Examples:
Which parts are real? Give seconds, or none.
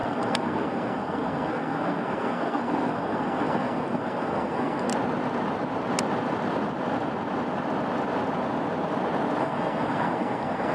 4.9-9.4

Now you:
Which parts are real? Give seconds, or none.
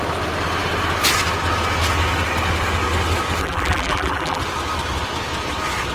0.0-3.4; 4.4-5.9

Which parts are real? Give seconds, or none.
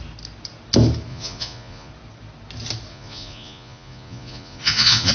0.0-1.1; 1.9-2.9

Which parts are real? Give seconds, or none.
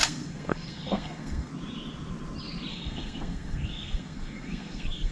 1.5-2.7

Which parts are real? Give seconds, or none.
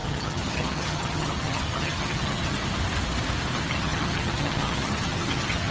2.6-3.6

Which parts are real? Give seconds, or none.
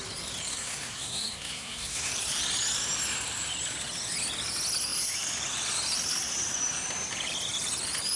0.0-0.5; 2.1-8.2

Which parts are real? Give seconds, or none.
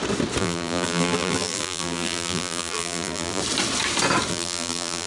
0.0-0.4; 3.4-4.3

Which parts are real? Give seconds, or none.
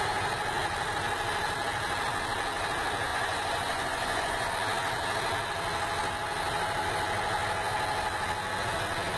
0.0-3.1; 4.5-9.2